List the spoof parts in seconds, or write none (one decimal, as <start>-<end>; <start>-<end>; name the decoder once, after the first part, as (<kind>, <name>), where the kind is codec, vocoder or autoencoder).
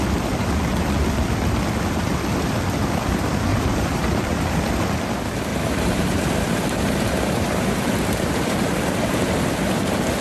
3.5-4.7 (vocoder, BigVGAN v2); 5.5-9.4